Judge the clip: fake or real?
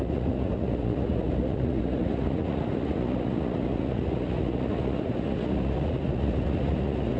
fake